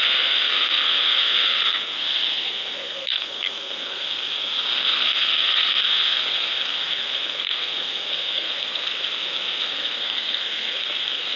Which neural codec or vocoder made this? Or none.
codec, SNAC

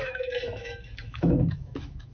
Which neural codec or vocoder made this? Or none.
autoencoder, DAC-VAE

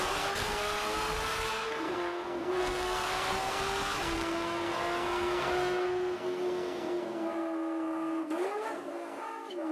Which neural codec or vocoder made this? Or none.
codec, SNAC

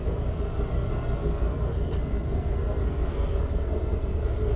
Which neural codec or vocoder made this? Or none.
codec, SNAC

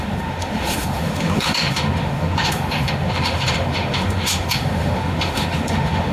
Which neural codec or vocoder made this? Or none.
autoencoder, DAC-VAE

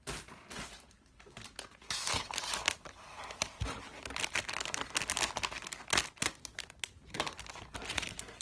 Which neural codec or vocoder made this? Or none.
none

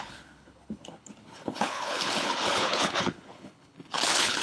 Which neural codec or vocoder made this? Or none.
codec, HILCodec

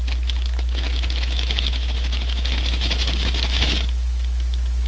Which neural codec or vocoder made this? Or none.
autoencoder, DAC-VAE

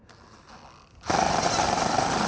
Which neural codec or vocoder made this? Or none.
none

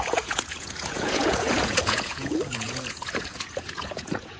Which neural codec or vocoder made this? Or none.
vocoder, Vocos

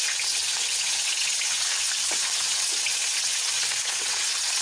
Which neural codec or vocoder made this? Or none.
vocoder, WaveNeXt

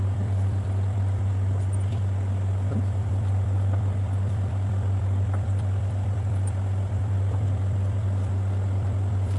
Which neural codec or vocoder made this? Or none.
vocoder, BigVGAN v2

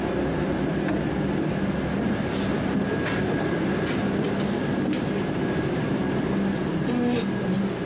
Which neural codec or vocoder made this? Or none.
none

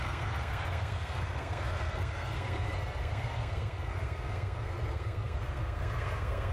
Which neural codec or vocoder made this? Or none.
codec, SNAC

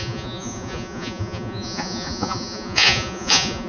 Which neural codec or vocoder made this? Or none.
vocoder, Vocos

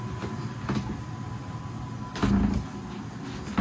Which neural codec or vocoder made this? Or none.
none